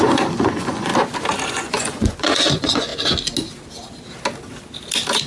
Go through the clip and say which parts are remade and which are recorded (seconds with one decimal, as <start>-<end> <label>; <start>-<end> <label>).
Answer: 0.0-0.9 remade; 0.9-1.5 recorded; 1.5-2.9 remade; 2.9-5.3 recorded